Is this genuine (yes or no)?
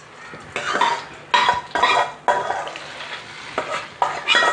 yes